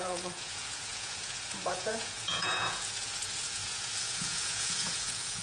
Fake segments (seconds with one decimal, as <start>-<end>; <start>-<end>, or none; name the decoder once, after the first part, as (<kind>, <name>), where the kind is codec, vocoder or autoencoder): 0.0-5.4 (vocoder, Vocos)